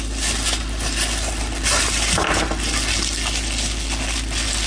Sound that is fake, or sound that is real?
real